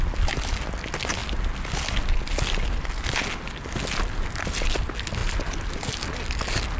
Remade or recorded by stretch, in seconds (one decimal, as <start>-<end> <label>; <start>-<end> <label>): 0.0-6.8 recorded